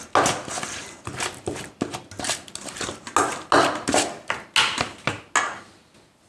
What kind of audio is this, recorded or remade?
recorded